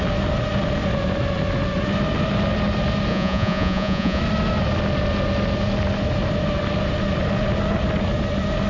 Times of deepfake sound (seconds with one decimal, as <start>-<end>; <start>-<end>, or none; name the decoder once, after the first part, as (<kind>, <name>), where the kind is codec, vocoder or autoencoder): 3.1-4.2 (vocoder, Vocos)